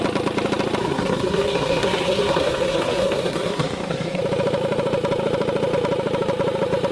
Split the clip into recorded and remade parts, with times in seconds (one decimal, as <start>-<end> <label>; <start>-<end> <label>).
0.0-0.8 recorded; 0.8-4.2 remade; 4.2-6.9 recorded